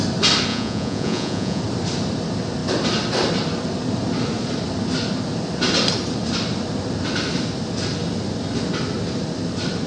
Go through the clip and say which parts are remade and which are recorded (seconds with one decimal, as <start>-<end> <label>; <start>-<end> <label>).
0.0-0.5 recorded; 0.5-1.6 remade; 1.6-9.9 recorded